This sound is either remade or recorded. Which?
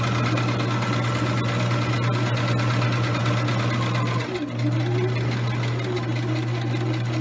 recorded